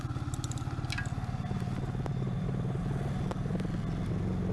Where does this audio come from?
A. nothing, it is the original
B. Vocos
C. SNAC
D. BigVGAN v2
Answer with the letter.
A